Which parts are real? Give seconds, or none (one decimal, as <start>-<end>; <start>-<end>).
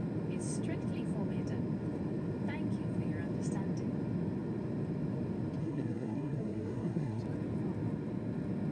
0.0-5.6; 7.2-8.7